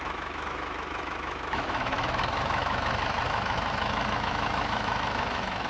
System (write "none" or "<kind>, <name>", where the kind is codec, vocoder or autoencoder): autoencoder, DAC-VAE